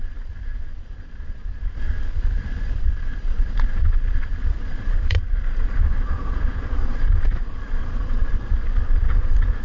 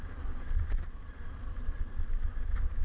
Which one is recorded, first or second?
second